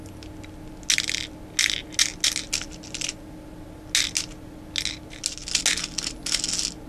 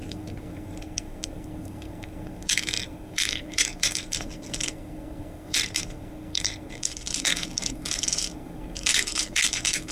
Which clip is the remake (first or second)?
second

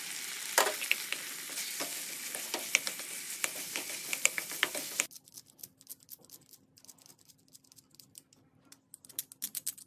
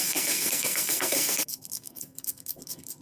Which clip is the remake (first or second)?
second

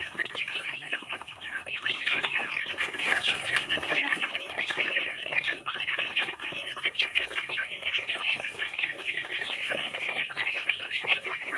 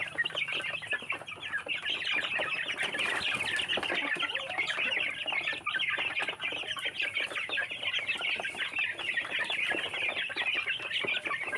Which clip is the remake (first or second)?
first